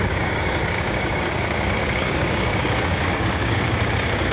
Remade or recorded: remade